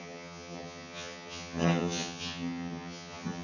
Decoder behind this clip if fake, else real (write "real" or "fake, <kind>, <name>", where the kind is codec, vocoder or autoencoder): fake, vocoder, HiFi-GAN